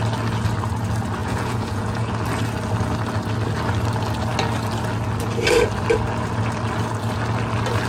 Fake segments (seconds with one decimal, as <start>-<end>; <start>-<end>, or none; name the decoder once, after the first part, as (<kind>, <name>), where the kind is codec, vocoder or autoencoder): 1.2-2.1 (vocoder, Vocos)